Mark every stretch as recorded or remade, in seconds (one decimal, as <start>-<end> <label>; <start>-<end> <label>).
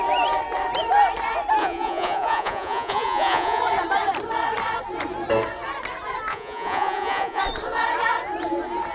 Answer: 0.0-1.6 recorded; 1.6-3.6 remade; 3.6-6.3 recorded; 6.3-7.4 remade; 7.4-8.9 recorded